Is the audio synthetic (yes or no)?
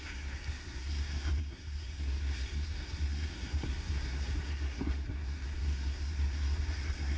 yes